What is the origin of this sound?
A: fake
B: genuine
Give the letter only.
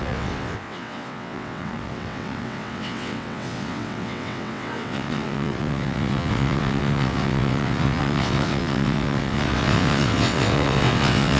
A